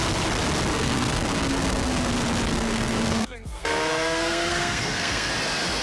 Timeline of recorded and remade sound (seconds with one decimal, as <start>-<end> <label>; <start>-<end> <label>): 0.0-0.7 recorded; 0.7-2.1 remade; 2.1-2.5 recorded; 2.5-5.3 remade; 5.3-5.8 recorded